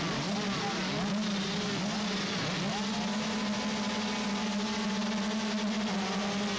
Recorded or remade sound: recorded